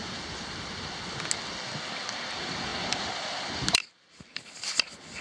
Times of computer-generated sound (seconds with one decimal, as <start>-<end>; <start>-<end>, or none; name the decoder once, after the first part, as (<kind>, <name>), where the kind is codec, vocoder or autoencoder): none